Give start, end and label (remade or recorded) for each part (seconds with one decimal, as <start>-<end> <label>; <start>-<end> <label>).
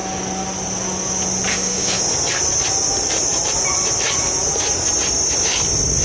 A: 0.0-1.5 recorded; 1.5-2.0 remade; 2.0-6.0 recorded